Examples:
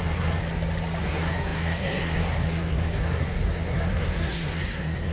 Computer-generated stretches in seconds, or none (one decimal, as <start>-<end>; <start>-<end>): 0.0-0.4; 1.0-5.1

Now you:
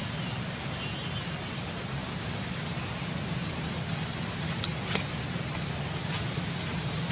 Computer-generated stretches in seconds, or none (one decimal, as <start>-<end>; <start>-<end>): none

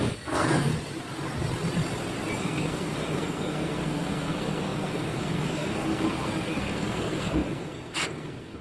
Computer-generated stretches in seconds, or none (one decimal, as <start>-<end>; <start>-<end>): 0.0-0.7; 2.4-8.6

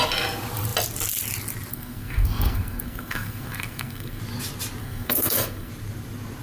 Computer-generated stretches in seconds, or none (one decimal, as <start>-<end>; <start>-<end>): 1.7-4.2; 4.8-5.7

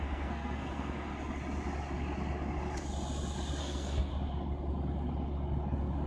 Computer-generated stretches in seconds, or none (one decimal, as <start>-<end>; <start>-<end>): 0.0-1.1; 3.6-4.1